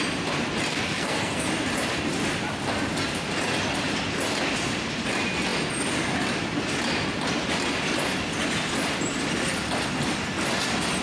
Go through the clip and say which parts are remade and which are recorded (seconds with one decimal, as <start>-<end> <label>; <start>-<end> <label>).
0.0-0.7 recorded; 0.7-1.5 remade; 1.5-11.0 recorded